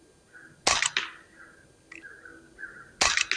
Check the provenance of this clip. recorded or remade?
recorded